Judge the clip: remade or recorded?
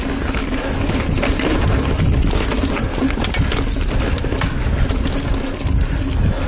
recorded